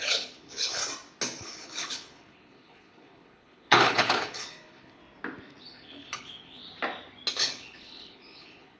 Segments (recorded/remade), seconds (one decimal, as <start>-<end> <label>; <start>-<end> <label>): 0.0-0.8 remade; 0.8-1.4 recorded; 1.4-5.0 remade; 5.0-5.6 recorded; 5.6-6.6 remade; 6.6-7.3 recorded; 7.3-8.8 remade